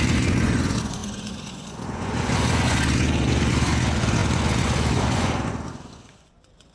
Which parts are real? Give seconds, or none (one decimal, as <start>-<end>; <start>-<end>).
none